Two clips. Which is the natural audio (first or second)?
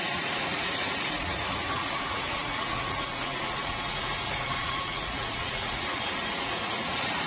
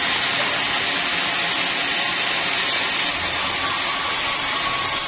second